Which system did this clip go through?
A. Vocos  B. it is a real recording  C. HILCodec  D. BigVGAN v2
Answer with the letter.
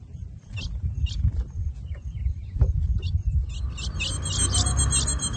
B